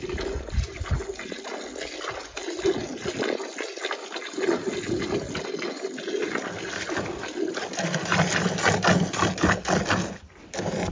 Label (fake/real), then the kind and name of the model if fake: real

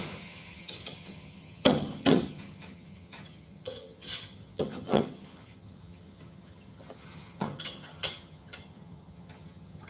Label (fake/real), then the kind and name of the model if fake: fake, vocoder, HiFi-GAN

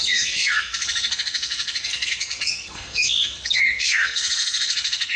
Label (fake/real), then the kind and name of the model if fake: fake, codec, SNAC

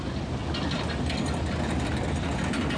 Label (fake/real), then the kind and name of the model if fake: real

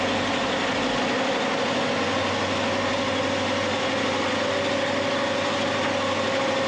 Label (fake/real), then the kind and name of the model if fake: real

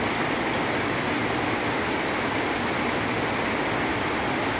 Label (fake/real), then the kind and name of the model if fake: real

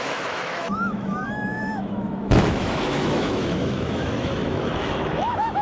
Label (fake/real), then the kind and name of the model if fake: fake, autoencoder, DAC-VAE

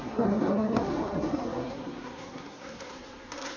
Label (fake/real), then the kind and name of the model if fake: fake, codec, SNAC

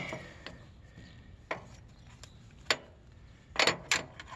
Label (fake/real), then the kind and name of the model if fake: real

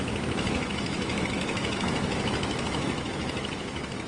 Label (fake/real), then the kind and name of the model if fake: fake, autoencoder, DAC-VAE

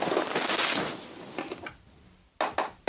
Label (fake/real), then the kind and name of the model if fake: real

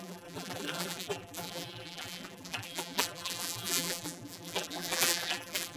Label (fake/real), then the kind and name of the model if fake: fake, vocoder, BigVGAN v2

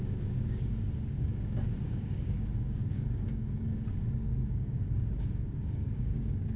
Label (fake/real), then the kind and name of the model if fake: fake, codec, DAC